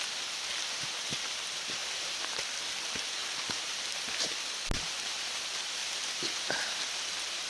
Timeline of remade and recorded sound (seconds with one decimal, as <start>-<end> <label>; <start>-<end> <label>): 0.0-3.2 recorded; 3.2-3.8 remade; 3.8-5.8 recorded; 5.8-6.4 remade; 6.4-7.5 recorded